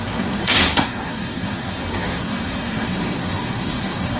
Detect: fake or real fake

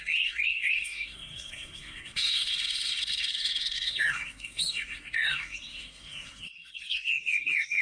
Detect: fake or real fake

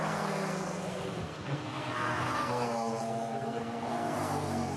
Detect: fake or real fake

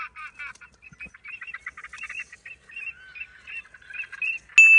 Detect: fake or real real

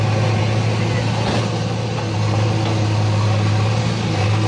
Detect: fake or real real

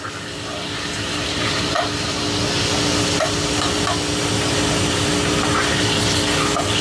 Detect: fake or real real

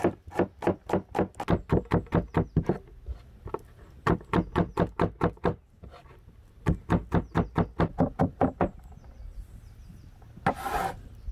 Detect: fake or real real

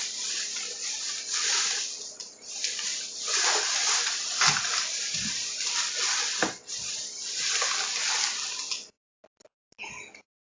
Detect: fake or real real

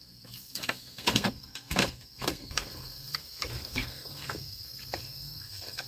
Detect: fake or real fake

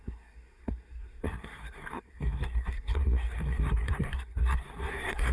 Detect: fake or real fake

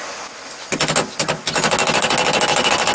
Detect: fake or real real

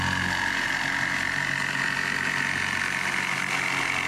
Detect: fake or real real